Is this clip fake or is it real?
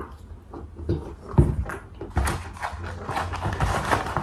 real